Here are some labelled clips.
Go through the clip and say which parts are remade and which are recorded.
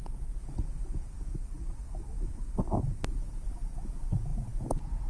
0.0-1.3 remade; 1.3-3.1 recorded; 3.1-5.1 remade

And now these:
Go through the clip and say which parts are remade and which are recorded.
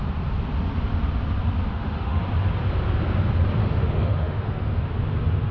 0.0-1.7 recorded; 1.7-2.2 remade; 2.2-3.6 recorded; 3.6-4.9 remade; 4.9-5.5 recorded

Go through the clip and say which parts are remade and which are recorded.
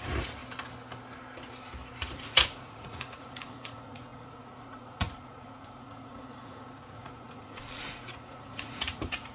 0.0-0.4 remade; 0.4-2.1 recorded; 2.1-9.3 remade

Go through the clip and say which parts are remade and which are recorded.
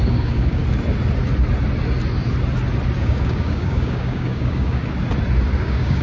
0.0-0.6 remade; 0.6-3.0 recorded; 3.0-4.8 remade; 4.8-5.6 recorded; 5.6-6.0 remade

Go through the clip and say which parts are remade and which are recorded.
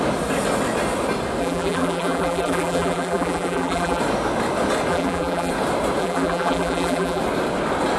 0.0-1.4 recorded; 1.4-4.0 remade; 4.0-4.9 recorded; 4.9-5.5 remade; 5.5-6.0 recorded; 6.0-7.2 remade; 7.2-8.0 recorded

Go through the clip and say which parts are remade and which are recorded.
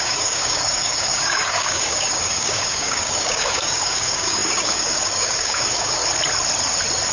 0.0-6.0 remade; 6.0-7.1 recorded